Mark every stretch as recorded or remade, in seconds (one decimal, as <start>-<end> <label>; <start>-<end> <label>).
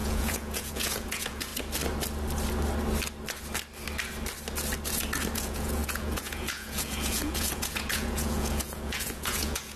0.0-1.5 remade; 1.5-5.3 recorded; 5.3-9.8 remade